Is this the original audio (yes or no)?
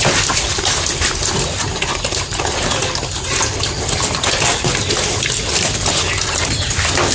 yes